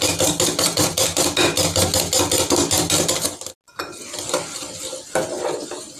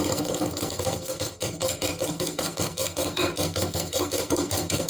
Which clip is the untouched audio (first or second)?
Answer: first